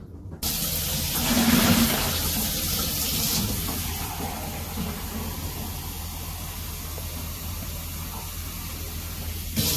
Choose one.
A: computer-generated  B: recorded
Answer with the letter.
B